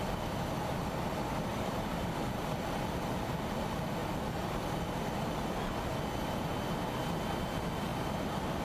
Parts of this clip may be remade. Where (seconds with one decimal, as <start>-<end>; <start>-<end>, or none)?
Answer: 1.5-2.1; 7.9-8.6